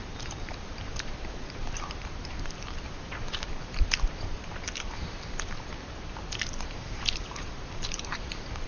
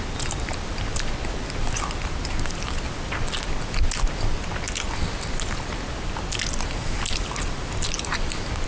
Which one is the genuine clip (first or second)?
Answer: second